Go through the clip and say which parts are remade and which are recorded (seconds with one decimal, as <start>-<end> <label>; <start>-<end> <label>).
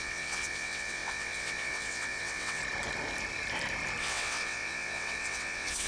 0.0-2.6 remade; 2.6-4.0 recorded; 4.0-5.9 remade